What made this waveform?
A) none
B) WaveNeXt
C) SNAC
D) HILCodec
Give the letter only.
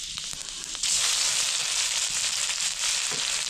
A